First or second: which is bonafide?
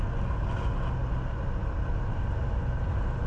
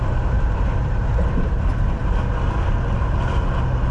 first